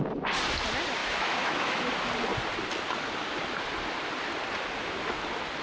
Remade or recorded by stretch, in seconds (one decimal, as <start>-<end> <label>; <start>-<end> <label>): 0.0-1.0 recorded; 1.0-1.8 remade; 1.8-5.6 recorded